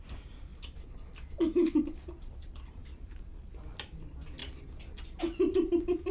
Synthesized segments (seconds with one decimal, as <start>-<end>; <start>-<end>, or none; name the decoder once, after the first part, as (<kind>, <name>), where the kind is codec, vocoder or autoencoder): 0.0-0.5 (vocoder, BigVGAN v2); 1.3-6.1